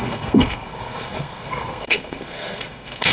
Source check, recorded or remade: remade